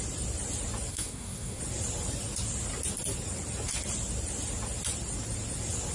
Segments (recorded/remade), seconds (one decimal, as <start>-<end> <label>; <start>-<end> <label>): 0.0-0.9 recorded; 0.9-1.6 remade; 1.6-5.9 recorded